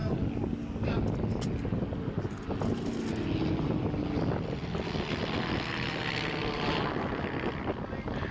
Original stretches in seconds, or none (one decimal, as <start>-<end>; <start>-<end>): 0.0-8.3